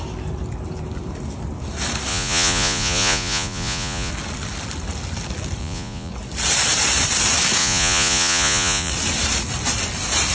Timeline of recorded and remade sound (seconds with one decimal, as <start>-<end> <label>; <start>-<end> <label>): 0.0-2.1 recorded; 2.1-4.1 remade; 4.1-5.6 recorded; 5.6-6.1 remade; 6.1-7.6 recorded; 7.6-8.9 remade; 8.9-10.3 recorded